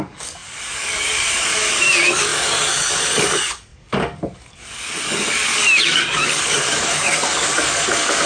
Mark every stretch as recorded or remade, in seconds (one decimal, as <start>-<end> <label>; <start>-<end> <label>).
0.0-8.3 remade